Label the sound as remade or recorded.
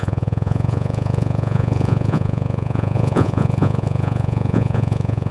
remade